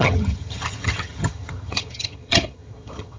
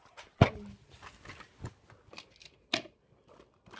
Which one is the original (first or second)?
second